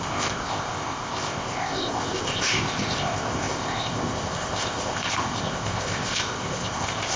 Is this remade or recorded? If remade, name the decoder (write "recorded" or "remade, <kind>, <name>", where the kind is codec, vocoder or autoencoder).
remade, codec, ZipCodec